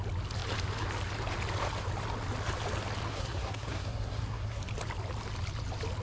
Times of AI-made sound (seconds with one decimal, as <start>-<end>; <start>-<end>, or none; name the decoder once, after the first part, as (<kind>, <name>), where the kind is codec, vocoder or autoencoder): 3.1-4.6 (codec, SNAC)